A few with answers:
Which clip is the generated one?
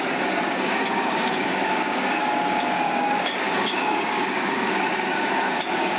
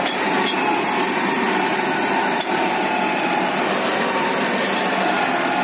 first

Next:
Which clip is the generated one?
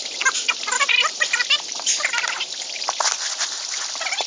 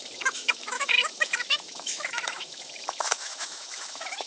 second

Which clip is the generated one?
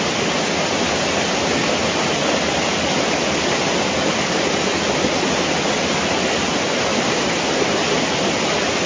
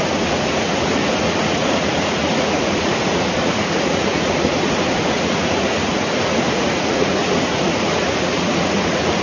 second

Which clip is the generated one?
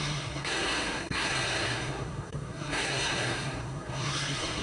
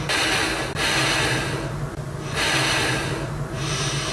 first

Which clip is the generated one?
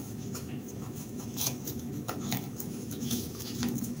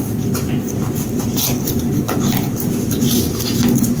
first